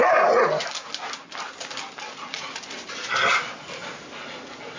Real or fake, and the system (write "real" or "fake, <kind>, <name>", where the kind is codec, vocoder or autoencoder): real